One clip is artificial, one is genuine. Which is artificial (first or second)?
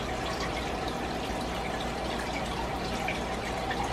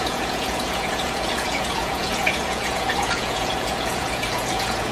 second